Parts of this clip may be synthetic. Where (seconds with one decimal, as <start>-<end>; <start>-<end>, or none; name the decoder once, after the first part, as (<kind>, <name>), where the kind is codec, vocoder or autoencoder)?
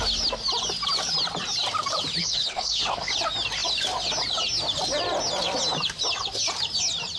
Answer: 2.2-3.1 (codec, HILCodec)